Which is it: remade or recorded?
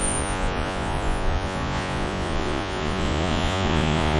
remade